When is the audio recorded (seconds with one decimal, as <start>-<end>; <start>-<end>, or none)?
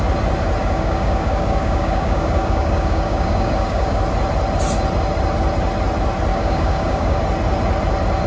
0.0-0.6; 4.0-6.3; 7.2-8.3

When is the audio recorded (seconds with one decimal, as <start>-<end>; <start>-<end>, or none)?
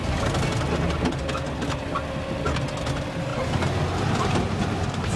0.0-3.3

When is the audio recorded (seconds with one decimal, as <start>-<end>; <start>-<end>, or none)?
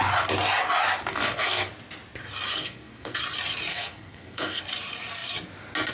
0.0-1.1; 1.7-2.5; 3.2-3.7; 4.6-5.9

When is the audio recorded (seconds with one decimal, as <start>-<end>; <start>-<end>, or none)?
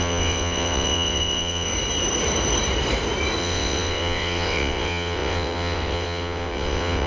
1.7-3.4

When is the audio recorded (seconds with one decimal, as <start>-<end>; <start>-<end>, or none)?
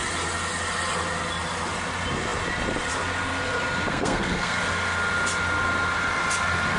0.0-3.9; 4.6-6.8